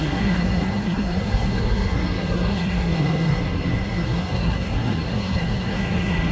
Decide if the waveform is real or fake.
fake